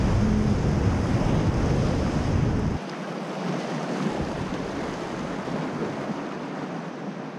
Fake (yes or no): no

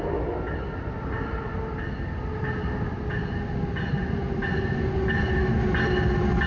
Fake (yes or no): no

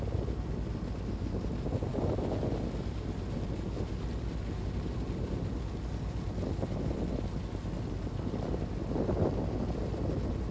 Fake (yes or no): no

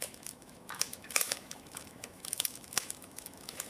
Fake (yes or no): yes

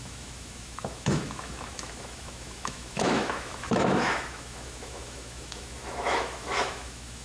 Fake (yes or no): yes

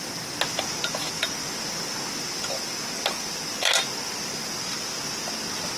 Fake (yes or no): no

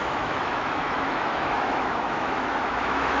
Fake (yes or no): yes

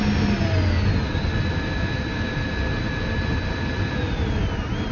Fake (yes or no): no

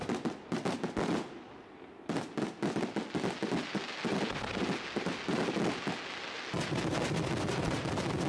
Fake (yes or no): no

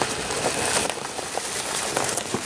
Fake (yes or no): no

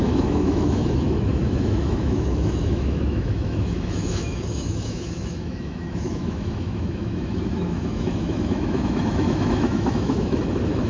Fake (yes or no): yes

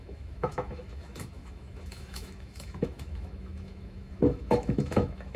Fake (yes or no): yes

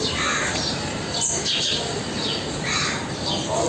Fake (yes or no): no